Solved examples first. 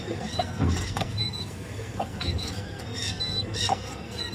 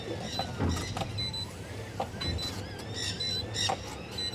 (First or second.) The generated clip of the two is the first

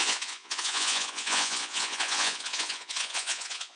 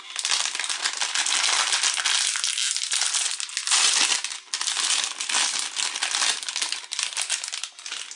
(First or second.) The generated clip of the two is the first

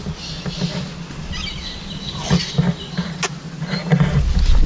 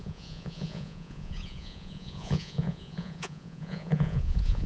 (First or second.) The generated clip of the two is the second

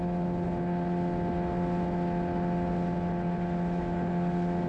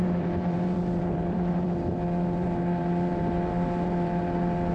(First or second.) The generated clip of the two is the second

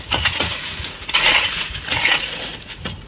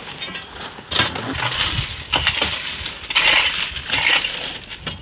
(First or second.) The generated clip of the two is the first